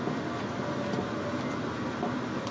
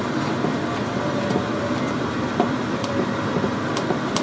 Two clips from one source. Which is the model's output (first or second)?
second